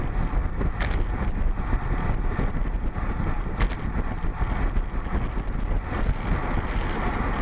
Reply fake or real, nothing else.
real